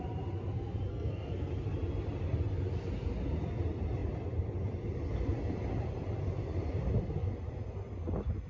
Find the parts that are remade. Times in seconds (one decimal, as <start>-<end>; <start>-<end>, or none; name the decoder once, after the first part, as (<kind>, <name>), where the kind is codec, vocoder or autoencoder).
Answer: 0.9-1.5 (codec, SNAC)